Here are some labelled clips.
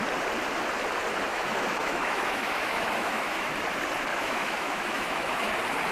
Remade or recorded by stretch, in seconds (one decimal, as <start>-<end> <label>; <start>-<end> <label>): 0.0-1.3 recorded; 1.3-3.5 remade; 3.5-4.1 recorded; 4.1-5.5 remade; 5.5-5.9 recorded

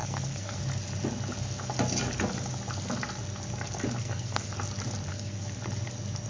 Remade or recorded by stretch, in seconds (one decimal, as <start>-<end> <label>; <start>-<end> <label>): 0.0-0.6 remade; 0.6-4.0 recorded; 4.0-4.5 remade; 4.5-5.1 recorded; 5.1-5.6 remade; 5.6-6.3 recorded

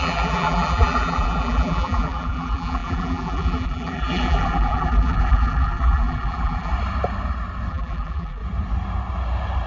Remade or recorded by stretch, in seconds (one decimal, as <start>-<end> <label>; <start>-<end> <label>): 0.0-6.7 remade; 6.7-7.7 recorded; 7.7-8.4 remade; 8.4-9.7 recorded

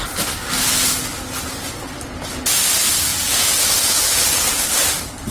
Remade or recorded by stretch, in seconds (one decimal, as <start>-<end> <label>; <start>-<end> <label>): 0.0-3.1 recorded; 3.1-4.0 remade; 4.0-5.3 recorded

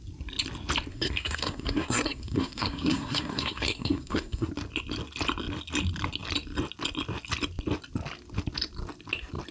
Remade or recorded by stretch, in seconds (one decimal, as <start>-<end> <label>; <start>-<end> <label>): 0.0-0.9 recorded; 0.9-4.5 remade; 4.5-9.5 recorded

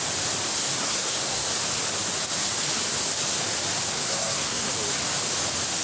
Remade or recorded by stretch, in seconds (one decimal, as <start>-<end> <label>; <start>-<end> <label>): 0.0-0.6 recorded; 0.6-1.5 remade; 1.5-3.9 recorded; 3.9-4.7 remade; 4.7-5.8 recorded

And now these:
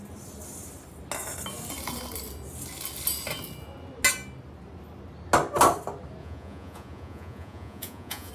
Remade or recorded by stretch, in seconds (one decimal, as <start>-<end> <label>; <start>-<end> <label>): 0.0-6.2 recorded; 6.2-8.3 remade

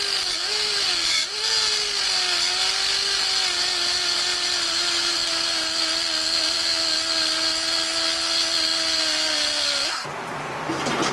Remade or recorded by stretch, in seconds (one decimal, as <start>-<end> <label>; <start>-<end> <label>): 0.0-11.1 recorded